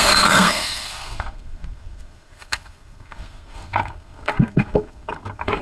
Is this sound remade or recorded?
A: remade